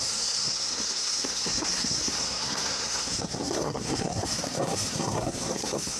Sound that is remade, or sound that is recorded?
remade